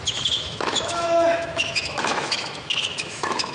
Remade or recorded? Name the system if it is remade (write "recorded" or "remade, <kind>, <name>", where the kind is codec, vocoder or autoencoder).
remade, autoencoder, DAC-VAE